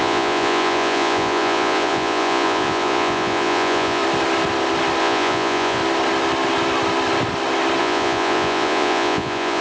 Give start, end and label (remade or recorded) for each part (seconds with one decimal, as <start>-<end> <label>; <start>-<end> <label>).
0.0-4.0 remade; 4.0-5.0 recorded; 5.0-5.8 remade; 5.8-7.8 recorded; 7.8-9.6 remade